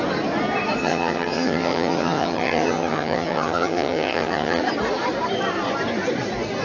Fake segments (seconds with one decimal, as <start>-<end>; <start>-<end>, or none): 0.8-4.6